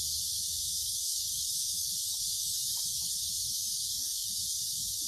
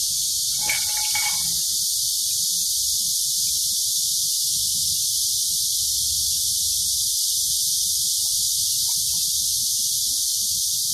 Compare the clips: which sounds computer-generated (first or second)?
first